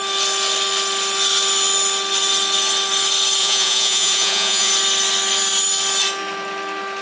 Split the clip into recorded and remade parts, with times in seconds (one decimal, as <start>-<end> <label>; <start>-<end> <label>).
0.0-3.4 recorded; 3.4-4.7 remade; 4.7-7.0 recorded